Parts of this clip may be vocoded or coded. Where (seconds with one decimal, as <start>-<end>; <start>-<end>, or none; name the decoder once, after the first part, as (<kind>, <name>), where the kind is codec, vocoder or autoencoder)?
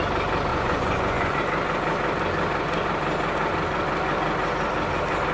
0.5-1.4 (vocoder, Vocos)